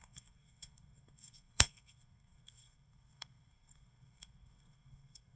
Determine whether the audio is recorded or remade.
remade